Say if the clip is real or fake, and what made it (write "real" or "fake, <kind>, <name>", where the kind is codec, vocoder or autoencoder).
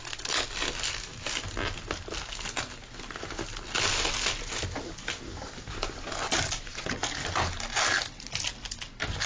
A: real